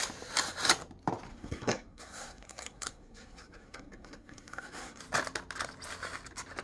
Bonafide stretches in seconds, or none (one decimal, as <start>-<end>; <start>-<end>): 0.0-1.3; 5.0-6.6